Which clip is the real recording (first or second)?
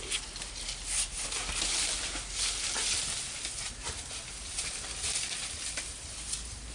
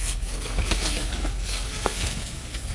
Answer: first